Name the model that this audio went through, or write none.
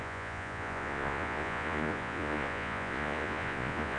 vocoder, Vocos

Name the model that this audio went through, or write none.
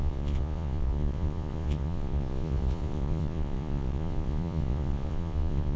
vocoder, Vocos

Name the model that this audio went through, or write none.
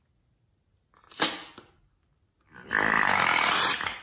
none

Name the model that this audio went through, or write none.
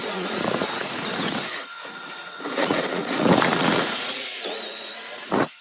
vocoder, Vocos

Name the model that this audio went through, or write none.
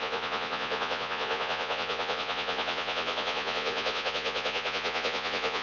vocoder, Vocos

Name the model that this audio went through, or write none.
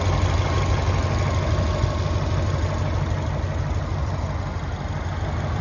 none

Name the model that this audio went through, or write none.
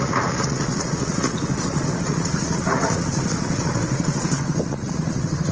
vocoder, Vocos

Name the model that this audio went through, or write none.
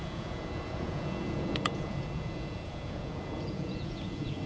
vocoder, Vocos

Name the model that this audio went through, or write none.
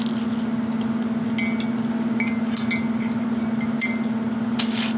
none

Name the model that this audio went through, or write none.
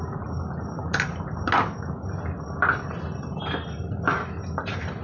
none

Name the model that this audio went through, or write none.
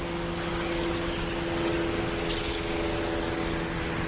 none